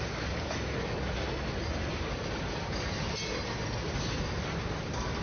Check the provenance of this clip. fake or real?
real